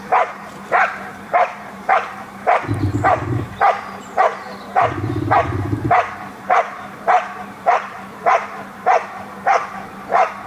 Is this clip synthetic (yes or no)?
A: yes